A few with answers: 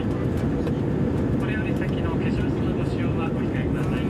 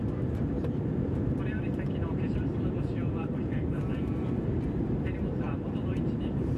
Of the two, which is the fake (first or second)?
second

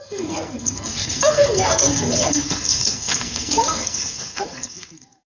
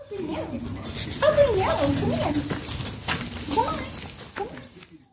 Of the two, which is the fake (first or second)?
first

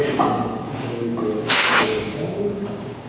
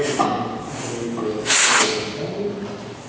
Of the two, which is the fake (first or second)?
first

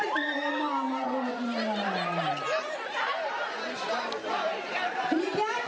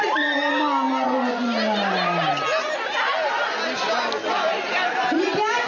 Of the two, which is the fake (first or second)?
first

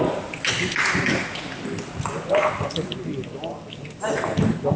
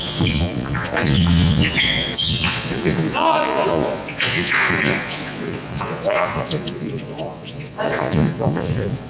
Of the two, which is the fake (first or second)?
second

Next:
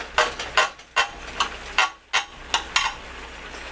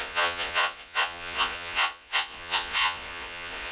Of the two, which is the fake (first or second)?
second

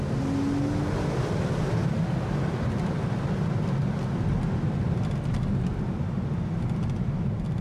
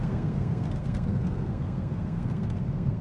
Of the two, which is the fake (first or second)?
second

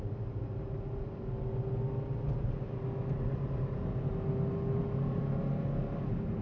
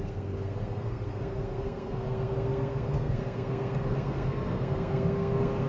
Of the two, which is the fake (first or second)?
second